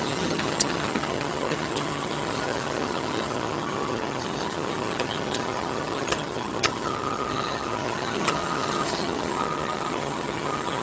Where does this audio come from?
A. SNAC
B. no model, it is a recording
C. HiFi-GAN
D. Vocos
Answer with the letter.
C